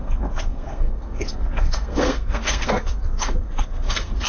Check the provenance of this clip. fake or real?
fake